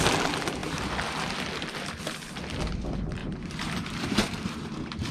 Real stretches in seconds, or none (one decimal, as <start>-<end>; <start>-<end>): 0.0-3.2